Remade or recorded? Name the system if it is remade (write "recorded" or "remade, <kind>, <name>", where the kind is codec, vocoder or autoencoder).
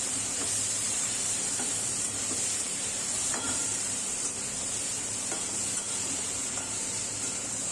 remade, vocoder, BigVGAN v2